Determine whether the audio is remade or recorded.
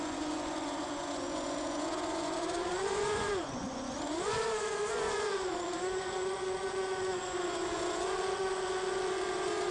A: remade